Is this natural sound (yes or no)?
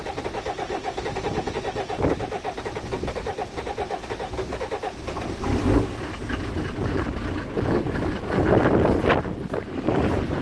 yes